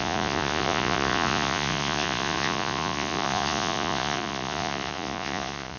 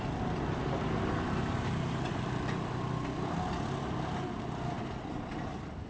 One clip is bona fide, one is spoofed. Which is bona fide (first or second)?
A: second